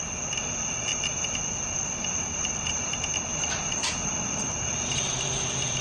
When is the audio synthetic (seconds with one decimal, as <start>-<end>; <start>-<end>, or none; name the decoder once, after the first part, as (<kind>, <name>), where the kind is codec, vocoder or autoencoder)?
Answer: none